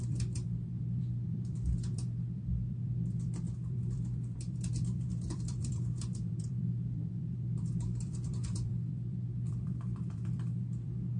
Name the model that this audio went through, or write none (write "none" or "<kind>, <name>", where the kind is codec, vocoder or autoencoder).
vocoder, BigVGAN v2